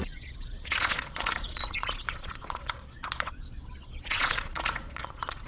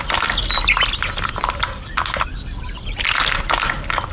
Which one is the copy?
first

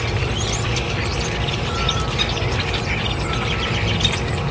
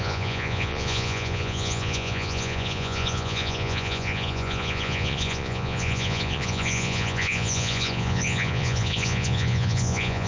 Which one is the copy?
second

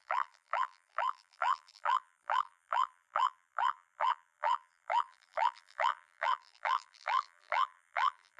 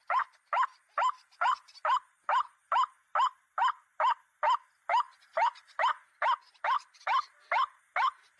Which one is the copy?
first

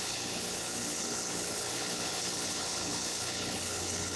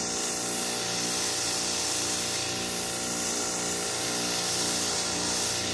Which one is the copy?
first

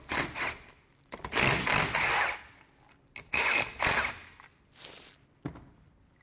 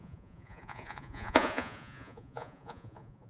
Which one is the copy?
second